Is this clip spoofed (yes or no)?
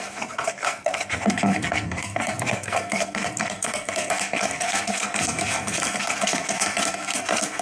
yes